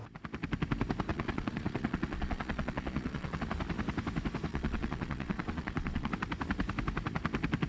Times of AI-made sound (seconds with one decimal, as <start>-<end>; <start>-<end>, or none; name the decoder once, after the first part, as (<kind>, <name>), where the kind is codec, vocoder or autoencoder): 1.1-3.4 (vocoder, Vocos); 4.5-6.1